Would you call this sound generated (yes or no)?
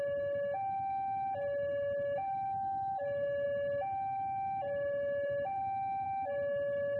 no